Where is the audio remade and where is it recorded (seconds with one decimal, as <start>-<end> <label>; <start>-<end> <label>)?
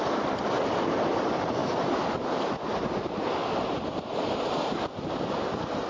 0.0-1.6 recorded; 1.6-5.1 remade; 5.1-5.9 recorded